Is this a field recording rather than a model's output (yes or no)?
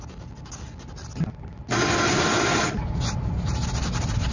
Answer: yes